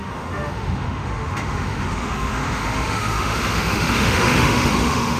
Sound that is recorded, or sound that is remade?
remade